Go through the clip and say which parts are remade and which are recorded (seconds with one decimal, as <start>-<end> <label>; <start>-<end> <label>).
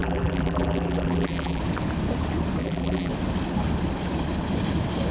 0.0-1.6 remade; 1.6-2.6 recorded; 2.6-3.1 remade; 3.1-5.1 recorded